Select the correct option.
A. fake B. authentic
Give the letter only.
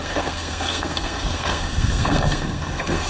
A